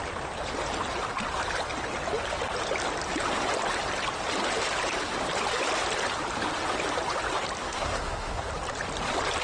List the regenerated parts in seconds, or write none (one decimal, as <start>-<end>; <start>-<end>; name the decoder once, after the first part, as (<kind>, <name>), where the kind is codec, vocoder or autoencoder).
7.6-8.5 (codec, SNAC)